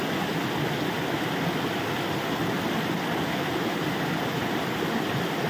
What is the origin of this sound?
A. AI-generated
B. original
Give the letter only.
B